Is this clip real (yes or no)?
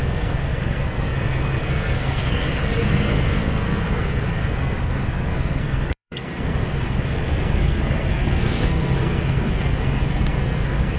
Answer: no